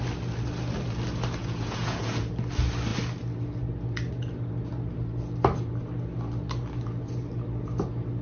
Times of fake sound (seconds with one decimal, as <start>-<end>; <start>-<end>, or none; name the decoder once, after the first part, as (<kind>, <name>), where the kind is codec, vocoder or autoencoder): 1.4-2.3 (vocoder, Vocos)

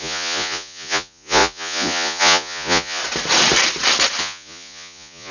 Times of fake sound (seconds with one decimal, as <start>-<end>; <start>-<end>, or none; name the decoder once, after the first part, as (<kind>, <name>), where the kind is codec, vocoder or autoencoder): 0.0-3.0 (vocoder, Vocos); 4.2-5.3

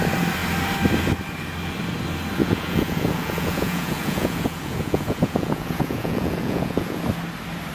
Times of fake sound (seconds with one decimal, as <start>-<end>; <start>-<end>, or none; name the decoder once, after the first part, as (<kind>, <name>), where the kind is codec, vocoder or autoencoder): 2.4-7.0 (vocoder, Vocos)